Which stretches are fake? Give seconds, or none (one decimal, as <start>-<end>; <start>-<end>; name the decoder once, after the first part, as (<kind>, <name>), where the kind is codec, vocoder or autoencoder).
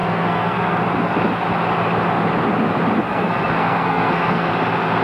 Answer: 0.0-0.8 (codec, SNAC); 3.0-4.5